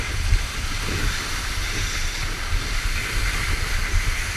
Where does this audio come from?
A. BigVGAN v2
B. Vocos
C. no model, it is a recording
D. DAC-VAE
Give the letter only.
C